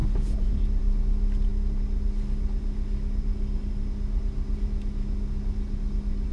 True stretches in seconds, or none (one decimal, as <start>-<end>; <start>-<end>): 0.5-6.3